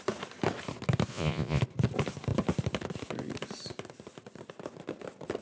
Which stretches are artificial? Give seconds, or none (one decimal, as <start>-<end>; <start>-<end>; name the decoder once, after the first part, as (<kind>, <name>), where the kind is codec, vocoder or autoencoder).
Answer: 1.1-1.6 (vocoder, Vocos)